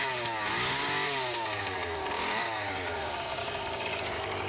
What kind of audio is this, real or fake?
fake